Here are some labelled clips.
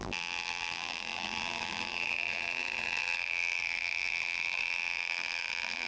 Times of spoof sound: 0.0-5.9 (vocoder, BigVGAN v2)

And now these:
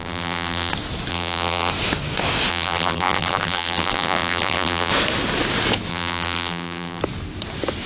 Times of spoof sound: 0.0-0.7 (vocoder, BigVGAN v2); 1.1-1.7; 2.5-4.9; 5.9-7.0

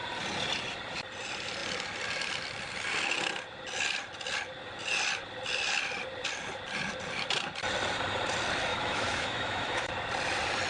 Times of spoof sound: 8.7-9.9 (autoencoder, DAC-VAE)

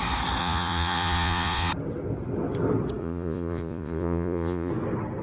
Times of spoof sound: 0.4-1.7 (vocoder, Vocos); 3.0-4.7

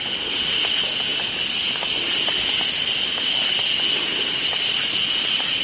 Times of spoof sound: none

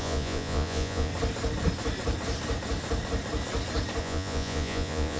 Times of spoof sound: 0.0-1.1 (vocoder, Vocos); 4.0-5.2